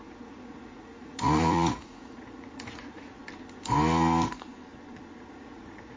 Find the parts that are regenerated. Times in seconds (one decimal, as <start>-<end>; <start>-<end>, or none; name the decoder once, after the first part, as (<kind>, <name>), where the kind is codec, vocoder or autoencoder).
0.0-3.2 (vocoder, Vocos); 5.3-6.0